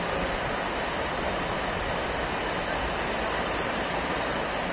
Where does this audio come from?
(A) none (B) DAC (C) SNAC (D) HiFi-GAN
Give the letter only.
A